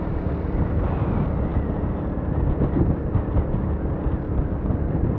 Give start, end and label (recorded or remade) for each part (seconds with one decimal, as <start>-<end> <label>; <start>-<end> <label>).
0.0-5.2 recorded